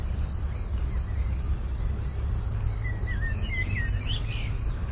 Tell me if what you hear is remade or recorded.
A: recorded